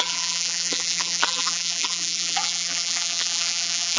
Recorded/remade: remade